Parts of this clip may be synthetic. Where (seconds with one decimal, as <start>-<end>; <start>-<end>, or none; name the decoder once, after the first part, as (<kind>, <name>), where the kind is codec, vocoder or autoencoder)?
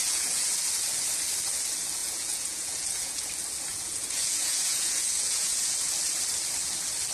0.0-0.5 (vocoder, Vocos); 2.0-3.3; 3.7-5.7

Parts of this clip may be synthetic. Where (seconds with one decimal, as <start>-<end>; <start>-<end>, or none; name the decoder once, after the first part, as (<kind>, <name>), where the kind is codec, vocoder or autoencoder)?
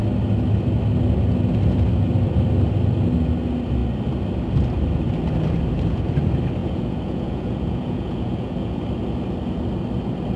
6.6-8.8 (vocoder, Vocos)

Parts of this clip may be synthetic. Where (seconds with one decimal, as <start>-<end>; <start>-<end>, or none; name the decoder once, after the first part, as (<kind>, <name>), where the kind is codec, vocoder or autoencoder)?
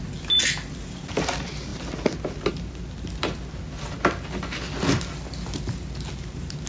none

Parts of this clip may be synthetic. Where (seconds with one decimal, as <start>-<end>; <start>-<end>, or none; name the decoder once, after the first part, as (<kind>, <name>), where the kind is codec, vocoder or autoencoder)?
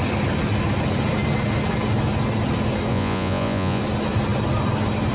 2.9-3.8 (vocoder, Vocos)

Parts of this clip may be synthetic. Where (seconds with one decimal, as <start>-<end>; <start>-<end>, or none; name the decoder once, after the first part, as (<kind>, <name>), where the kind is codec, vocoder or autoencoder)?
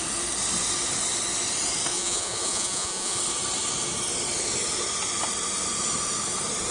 1.9-3.2 (vocoder, Vocos)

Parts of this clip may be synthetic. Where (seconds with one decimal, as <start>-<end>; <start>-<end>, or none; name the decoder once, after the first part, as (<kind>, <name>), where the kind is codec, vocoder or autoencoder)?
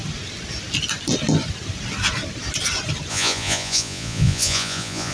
3.1-5.1 (vocoder, Vocos)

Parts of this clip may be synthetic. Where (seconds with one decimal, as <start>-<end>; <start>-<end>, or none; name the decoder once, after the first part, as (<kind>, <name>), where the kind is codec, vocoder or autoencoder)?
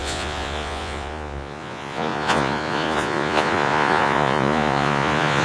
0.0-5.4 (vocoder, Vocos)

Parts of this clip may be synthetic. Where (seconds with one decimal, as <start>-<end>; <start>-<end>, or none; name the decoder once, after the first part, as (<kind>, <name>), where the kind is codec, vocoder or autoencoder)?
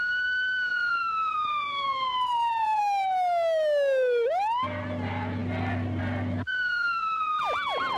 0.7-2.8 (vocoder, Vocos); 6.5-7.4